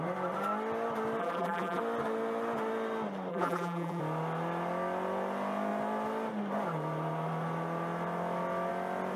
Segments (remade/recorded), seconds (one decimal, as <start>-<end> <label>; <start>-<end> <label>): 0.0-1.2 recorded; 1.2-1.8 remade; 1.8-3.3 recorded; 3.3-4.0 remade; 4.0-9.2 recorded